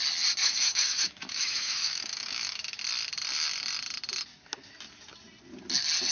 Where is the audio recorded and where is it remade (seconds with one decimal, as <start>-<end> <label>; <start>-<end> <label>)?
0.0-0.4 recorded; 0.4-2.8 remade; 2.8-6.1 recorded